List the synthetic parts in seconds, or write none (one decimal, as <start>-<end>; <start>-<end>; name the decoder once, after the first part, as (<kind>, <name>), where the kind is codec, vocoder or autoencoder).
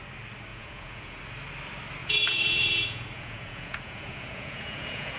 0.5-1.2 (vocoder, Vocos); 2.0-5.2